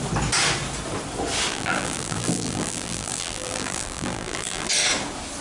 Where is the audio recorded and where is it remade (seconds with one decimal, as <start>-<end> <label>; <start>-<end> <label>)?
0.0-1.5 recorded; 1.5-4.7 remade; 4.7-5.4 recorded